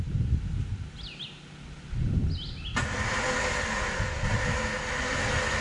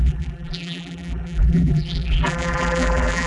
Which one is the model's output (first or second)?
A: second